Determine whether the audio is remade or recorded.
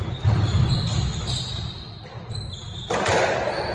recorded